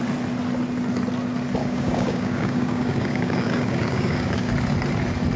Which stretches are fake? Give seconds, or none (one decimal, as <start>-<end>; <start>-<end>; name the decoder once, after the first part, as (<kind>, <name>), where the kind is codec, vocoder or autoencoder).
1.6-4.5 (codec, DAC)